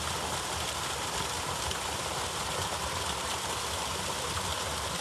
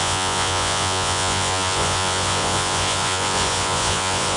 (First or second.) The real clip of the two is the first